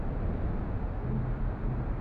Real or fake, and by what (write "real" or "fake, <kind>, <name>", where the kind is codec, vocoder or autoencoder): real